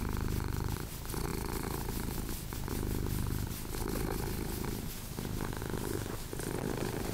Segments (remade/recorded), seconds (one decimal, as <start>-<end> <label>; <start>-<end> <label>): 0.0-7.1 recorded